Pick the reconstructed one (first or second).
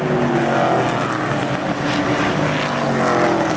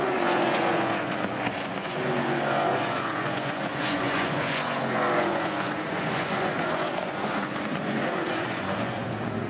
second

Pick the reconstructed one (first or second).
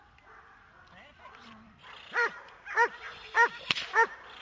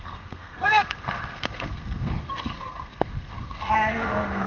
second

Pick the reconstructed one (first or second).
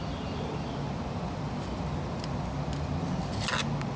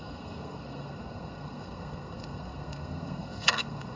second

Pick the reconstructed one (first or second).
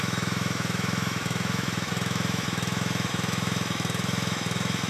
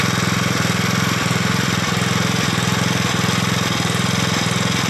first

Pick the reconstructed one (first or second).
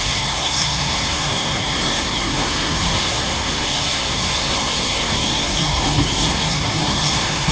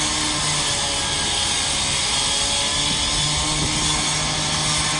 first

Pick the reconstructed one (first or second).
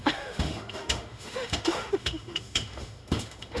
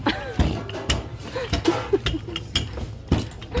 first